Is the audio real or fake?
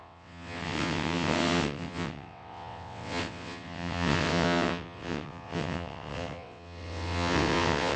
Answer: fake